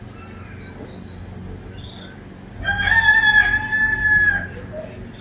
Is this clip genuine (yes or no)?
yes